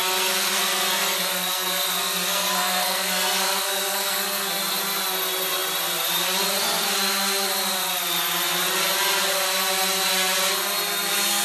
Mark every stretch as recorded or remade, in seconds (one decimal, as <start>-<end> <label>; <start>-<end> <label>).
0.0-4.6 remade; 4.6-11.4 recorded